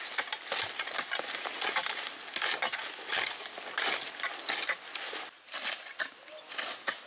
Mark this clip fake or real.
real